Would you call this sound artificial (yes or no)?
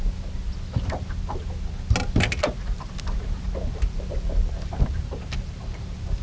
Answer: no